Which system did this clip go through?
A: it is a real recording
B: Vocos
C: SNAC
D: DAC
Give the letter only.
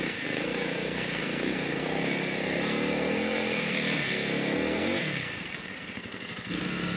C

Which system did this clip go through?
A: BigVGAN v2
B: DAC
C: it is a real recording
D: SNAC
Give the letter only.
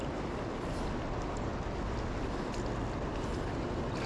C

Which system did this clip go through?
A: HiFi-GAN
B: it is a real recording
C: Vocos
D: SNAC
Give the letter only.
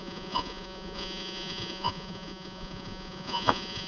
C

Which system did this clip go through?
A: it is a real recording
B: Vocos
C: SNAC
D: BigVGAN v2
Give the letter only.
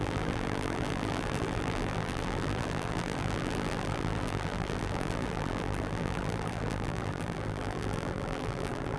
D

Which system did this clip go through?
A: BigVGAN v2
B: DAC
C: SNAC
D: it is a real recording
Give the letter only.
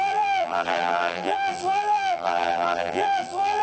A